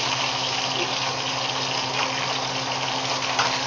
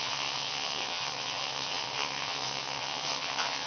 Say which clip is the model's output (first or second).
second